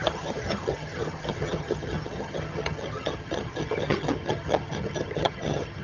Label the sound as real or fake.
fake